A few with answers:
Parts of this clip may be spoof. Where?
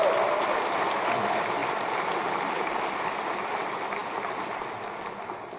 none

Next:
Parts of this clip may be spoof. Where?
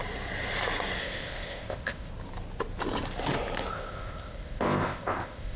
1.0-2.1 (codec, ZipCodec); 3.7-5.6